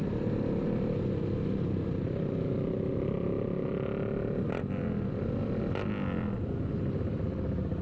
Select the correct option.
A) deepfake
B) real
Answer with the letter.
B